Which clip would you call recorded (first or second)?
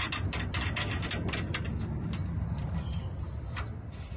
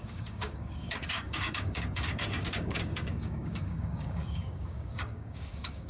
first